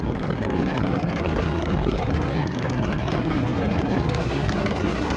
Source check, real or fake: fake